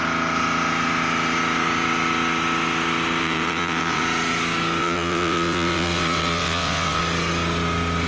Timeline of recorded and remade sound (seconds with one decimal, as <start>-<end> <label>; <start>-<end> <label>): 0.0-3.2 recorded; 3.2-4.0 remade; 4.0-4.8 recorded; 4.8-7.0 remade; 7.0-8.1 recorded